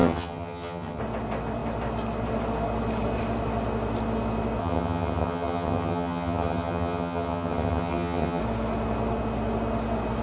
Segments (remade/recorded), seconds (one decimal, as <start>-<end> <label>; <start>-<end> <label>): 0.0-1.0 remade; 1.0-4.6 recorded; 4.6-8.4 remade; 8.4-10.2 recorded